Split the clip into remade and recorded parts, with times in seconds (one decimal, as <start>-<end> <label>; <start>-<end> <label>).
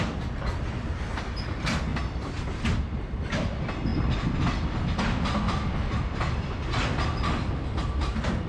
0.0-8.5 recorded